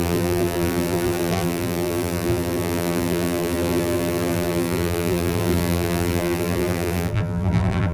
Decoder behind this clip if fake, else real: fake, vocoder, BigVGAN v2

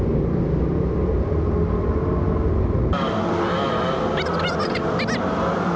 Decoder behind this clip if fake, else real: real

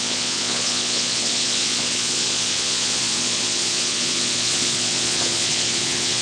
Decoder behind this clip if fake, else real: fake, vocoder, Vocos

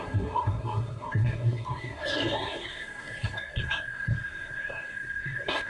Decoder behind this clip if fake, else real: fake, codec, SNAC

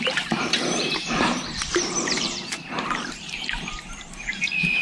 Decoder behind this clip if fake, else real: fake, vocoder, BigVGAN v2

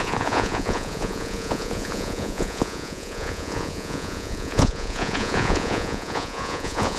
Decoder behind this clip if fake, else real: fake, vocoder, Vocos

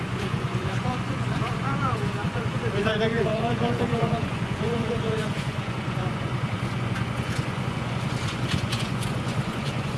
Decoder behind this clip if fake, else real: fake, vocoder, Vocos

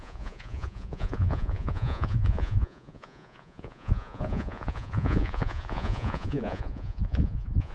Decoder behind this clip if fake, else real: fake, vocoder, Vocos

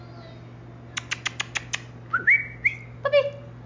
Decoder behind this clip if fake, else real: real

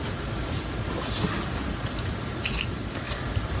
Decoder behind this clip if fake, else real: real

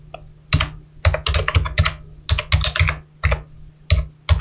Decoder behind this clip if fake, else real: real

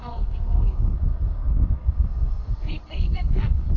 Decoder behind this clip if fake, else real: fake, codec, SNAC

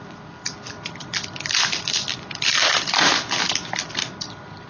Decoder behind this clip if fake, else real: fake, vocoder, BigVGAN v2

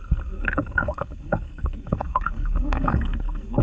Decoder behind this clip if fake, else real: fake, codec, SNAC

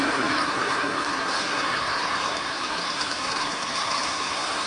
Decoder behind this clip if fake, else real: fake, codec, SNAC